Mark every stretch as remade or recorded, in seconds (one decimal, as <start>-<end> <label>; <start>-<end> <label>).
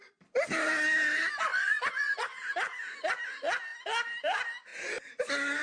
0.0-1.5 recorded; 1.5-2.4 remade; 2.4-5.6 recorded